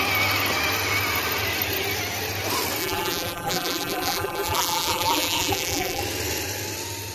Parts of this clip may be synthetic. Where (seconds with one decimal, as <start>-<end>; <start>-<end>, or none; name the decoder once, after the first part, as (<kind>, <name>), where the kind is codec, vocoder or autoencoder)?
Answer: 2.8-6.0 (vocoder, BigVGAN v2)